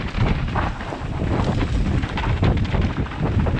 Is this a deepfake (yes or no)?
no